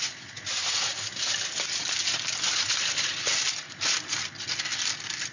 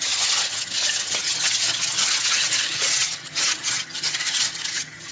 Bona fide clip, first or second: first